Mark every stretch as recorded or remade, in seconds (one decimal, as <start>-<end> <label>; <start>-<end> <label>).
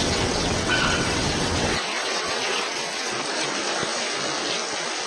0.0-3.1 remade; 3.1-5.1 recorded